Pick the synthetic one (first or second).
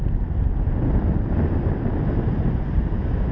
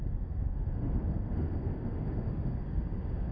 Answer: second